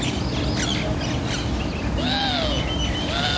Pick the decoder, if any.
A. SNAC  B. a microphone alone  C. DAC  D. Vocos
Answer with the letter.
B